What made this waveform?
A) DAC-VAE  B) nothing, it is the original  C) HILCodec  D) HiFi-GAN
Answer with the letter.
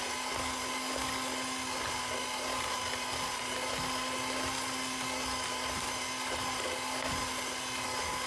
B